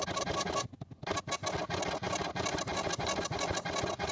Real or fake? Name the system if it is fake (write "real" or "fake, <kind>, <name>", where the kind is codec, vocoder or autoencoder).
real